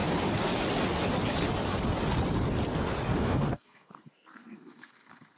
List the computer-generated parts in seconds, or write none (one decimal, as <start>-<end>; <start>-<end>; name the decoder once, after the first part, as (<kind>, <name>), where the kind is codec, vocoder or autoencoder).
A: 3.2-5.4 (codec, SNAC)